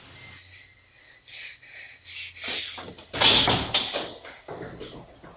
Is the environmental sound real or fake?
real